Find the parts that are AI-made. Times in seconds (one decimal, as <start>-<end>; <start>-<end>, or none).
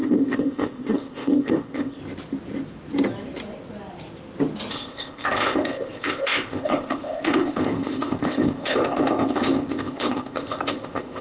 0.0-2.0; 4.7-11.2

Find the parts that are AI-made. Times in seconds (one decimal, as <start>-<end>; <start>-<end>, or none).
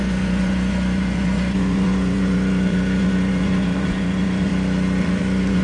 0.0-4.5; 5.0-5.6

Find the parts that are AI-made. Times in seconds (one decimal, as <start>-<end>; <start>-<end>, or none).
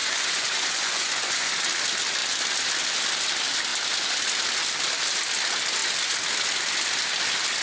0.0-1.5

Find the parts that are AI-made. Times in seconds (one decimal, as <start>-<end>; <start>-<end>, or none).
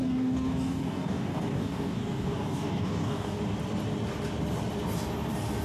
0.0-3.4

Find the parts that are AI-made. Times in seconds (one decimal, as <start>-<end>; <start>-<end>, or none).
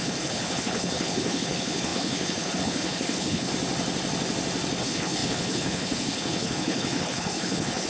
0.0-3.5; 4.8-7.9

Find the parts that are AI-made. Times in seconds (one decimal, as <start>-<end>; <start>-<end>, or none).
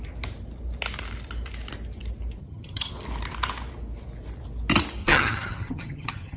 2.4-2.9; 5.0-6.4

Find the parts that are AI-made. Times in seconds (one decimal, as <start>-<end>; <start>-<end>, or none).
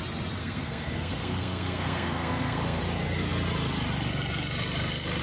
0.4-2.8